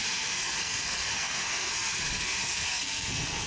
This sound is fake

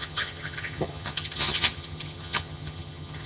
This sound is fake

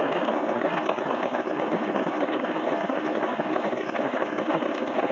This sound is fake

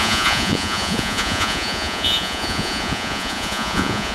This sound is fake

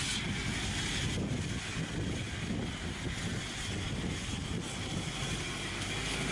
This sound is real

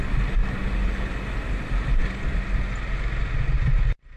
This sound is real